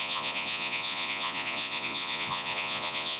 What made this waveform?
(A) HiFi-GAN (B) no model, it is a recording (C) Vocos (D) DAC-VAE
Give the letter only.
C